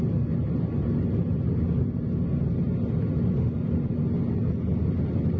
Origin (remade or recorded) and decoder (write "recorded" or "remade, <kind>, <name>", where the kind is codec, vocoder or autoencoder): recorded